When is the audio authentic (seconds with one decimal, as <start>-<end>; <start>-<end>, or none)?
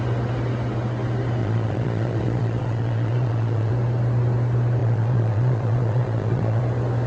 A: 0.0-1.4; 3.7-4.8; 6.6-7.1